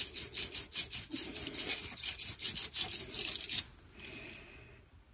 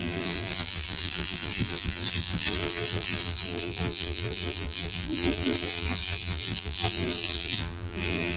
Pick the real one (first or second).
first